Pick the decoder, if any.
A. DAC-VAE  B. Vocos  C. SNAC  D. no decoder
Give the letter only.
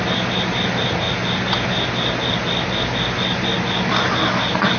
D